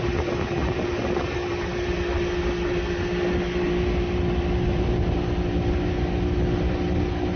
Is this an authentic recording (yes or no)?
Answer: yes